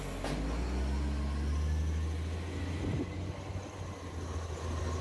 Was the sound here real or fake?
real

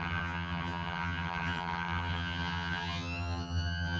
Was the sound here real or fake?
fake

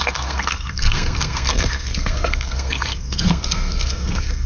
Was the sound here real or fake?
fake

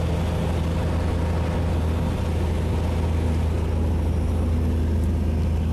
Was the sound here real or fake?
real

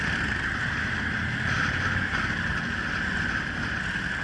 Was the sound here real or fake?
real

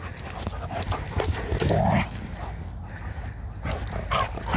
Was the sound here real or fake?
real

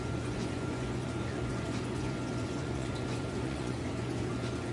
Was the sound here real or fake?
fake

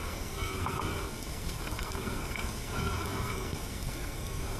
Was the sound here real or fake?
fake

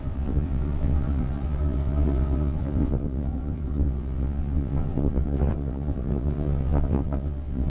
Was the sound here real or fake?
fake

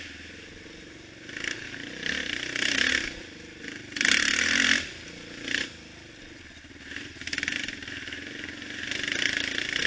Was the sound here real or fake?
real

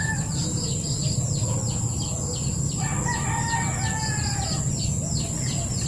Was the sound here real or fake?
real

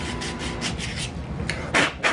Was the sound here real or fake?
real